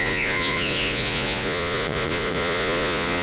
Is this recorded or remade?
remade